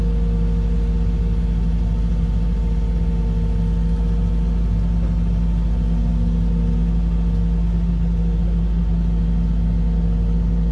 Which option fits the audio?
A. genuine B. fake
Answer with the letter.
A